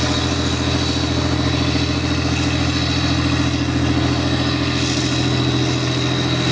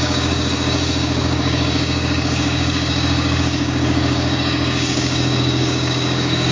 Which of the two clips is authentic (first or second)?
first